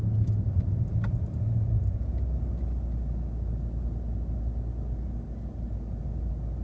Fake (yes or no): no